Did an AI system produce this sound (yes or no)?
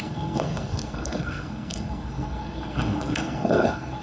yes